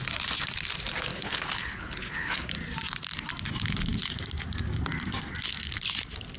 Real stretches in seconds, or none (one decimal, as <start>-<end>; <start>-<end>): 0.0-1.1; 2.5-6.4